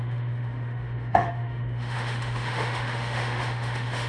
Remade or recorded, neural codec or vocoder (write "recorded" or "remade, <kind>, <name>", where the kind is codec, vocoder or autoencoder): remade, autoencoder, DAC-VAE